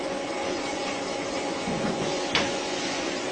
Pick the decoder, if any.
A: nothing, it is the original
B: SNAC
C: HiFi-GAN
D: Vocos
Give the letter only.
D